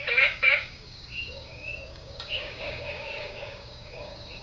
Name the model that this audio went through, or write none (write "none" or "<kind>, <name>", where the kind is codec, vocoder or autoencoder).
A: codec, DAC